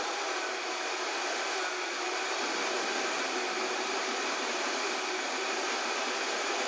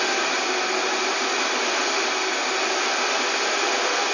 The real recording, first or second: second